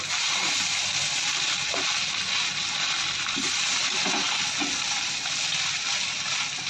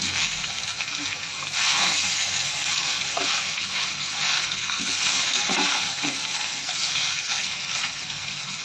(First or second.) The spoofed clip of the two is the second